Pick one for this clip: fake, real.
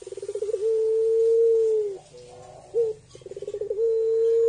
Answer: real